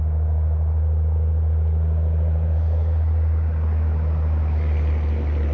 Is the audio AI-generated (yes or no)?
no